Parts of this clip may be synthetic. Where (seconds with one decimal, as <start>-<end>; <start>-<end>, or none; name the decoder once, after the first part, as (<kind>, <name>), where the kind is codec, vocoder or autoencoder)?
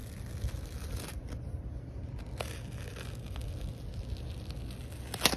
none